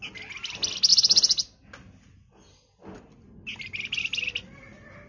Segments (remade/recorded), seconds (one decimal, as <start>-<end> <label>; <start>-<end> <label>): 0.0-5.1 recorded